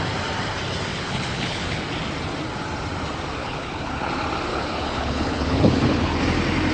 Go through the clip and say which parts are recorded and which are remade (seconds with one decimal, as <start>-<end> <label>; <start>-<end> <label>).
0.0-0.9 recorded; 0.9-1.8 remade; 1.8-3.4 recorded; 3.4-4.1 remade; 4.1-4.5 recorded; 4.5-6.2 remade; 6.2-6.7 recorded